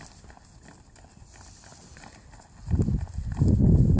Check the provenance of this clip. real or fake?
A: real